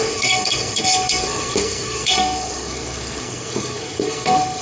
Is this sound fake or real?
fake